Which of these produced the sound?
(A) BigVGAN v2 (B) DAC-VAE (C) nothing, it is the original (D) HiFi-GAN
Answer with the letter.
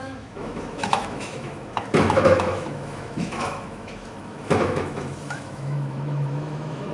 B